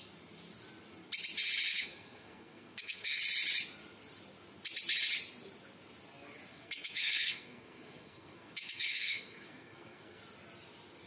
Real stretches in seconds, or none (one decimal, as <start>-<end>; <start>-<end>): 0.0-1.7; 3.2-6.5; 10.2-11.1

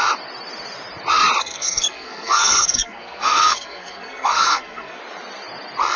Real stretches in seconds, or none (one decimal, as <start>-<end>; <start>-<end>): 0.0-1.4; 5.0-6.0

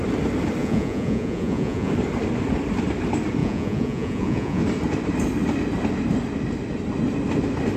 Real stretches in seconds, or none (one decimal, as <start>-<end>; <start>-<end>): 0.0-0.6; 1.9-3.4; 4.6-7.8

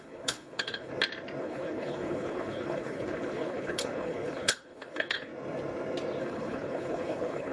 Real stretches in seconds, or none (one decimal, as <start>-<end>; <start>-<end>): 0.9-1.4; 5.3-6.2

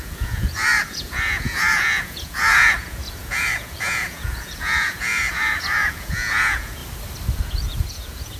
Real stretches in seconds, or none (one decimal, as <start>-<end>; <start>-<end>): 6.8-7.4

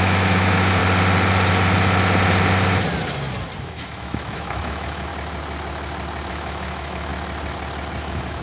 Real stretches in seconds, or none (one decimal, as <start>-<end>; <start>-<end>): 0.8-3.6; 5.1-6.3; 7.1-8.0

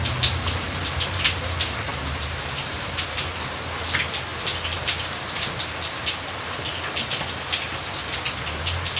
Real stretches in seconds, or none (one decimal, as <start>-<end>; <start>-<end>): 0.0-1.9; 3.1-9.0

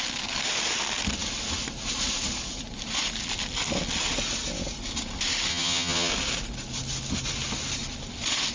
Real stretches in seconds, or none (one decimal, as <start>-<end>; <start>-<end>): 0.0-5.5; 6.1-8.5